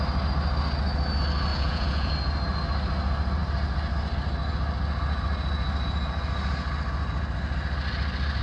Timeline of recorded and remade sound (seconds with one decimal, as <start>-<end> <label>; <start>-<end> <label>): 0.0-1.5 recorded; 1.5-2.1 remade; 2.1-8.4 recorded